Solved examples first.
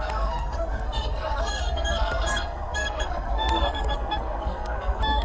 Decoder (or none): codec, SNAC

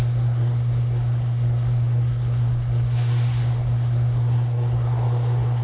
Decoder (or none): codec, SNAC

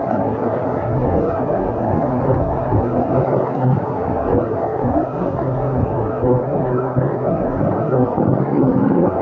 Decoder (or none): codec, SNAC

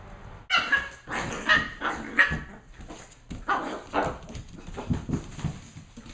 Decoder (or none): none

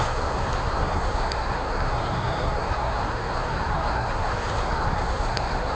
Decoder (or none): codec, SNAC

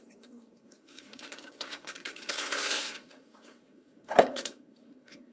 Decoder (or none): codec, SNAC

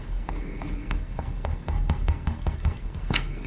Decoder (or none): codec, SNAC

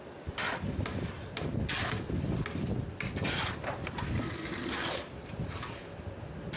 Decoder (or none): none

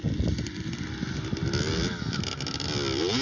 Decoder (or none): none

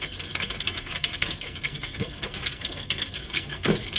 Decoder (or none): codec, SNAC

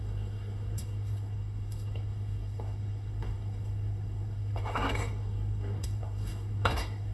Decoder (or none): codec, SNAC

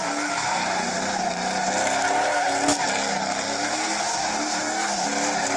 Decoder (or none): none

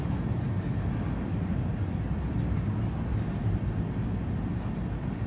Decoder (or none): none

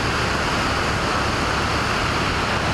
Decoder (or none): none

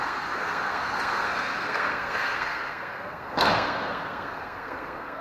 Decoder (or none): codec, SNAC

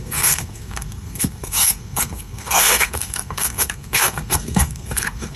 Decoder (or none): codec, SNAC